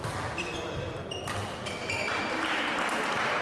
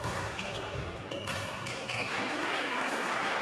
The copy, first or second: second